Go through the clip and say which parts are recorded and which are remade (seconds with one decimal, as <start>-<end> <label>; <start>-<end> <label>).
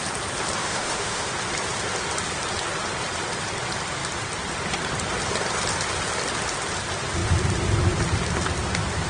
0.0-0.6 recorded; 0.6-1.3 remade; 1.3-9.1 recorded